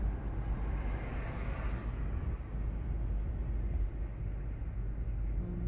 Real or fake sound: real